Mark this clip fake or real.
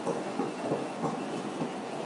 fake